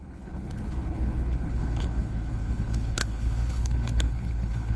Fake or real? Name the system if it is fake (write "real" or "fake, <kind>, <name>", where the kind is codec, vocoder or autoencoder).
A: fake, codec, HILCodec